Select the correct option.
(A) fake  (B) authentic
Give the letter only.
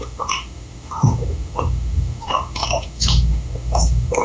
A